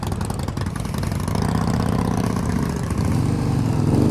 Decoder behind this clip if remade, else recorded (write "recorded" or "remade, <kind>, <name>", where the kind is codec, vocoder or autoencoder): recorded